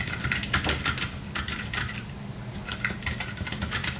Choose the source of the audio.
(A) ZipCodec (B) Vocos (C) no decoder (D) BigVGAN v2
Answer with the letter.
C